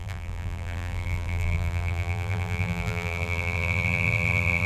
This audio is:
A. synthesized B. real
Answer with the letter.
A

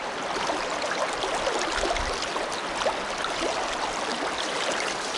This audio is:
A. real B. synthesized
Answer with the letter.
A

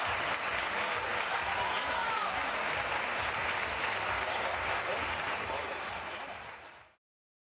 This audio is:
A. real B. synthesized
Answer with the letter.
A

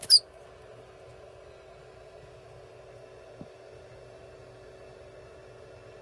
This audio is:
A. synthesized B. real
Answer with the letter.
B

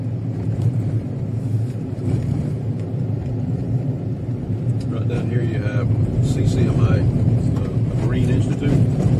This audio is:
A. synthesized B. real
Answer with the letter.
A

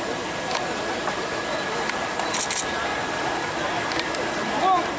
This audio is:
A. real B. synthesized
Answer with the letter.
A